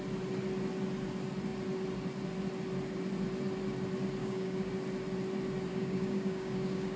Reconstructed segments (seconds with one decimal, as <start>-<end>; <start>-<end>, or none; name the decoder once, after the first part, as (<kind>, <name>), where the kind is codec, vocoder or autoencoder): 4.2-4.7 (codec, DAC); 5.7-7.0